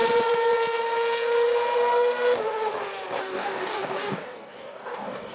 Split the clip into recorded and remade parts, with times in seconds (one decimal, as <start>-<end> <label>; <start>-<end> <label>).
0.0-3.2 recorded; 3.2-5.3 remade